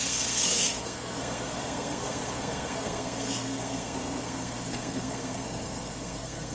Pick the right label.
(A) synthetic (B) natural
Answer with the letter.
A